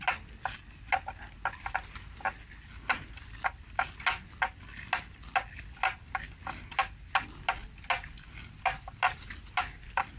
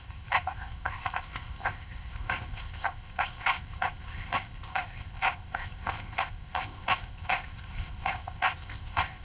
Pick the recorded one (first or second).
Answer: first